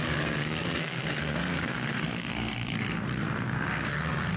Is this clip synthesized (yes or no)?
yes